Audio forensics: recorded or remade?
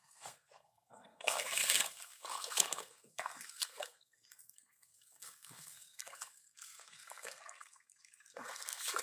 remade